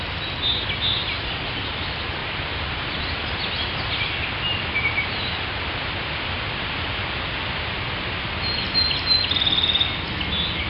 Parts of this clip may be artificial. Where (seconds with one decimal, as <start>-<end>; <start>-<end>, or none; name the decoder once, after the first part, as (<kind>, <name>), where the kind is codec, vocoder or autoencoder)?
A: none